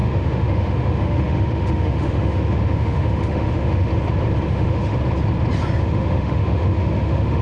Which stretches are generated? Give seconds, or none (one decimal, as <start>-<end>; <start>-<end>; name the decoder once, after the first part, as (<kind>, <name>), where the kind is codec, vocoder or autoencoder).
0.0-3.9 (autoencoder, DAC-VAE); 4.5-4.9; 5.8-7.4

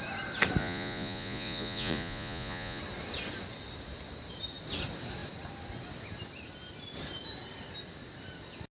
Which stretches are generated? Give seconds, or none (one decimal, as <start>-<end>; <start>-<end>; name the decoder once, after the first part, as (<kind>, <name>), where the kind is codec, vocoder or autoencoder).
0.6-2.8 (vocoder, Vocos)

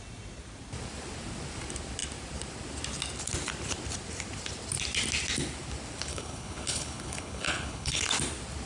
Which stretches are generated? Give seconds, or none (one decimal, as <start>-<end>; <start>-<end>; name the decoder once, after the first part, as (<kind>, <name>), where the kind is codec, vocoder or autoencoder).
6.1-8.0 (codec, HILCodec)